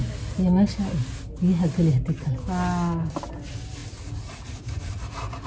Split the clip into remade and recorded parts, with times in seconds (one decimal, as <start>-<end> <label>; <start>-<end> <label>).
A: 0.0-5.5 recorded